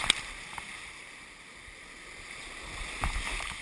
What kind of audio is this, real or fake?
real